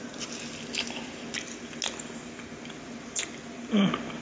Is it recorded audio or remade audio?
recorded